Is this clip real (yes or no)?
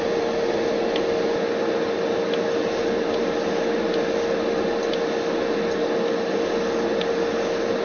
yes